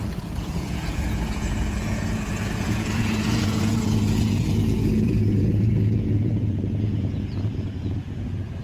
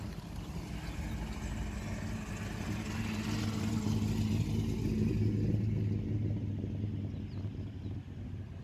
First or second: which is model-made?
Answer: first